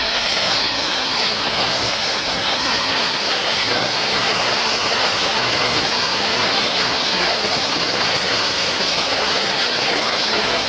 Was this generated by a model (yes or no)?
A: yes